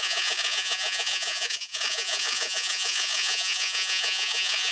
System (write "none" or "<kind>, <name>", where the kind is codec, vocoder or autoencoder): vocoder, Vocos